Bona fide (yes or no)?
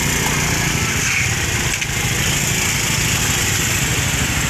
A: yes